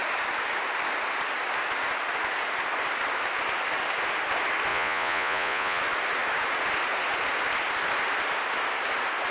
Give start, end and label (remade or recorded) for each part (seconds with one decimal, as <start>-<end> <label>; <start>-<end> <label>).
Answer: 0.0-4.7 recorded; 4.7-5.8 remade; 5.8-9.3 recorded